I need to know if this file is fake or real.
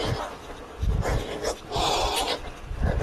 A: real